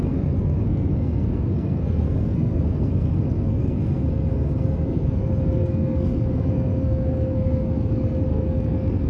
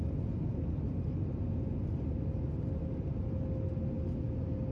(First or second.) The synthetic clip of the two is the first